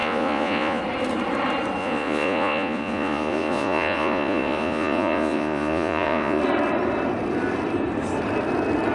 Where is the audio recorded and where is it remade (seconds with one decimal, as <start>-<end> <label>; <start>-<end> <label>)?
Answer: 0.0-0.8 remade; 0.8-1.8 recorded; 1.8-6.4 remade; 6.4-8.9 recorded